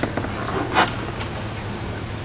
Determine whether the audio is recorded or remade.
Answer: recorded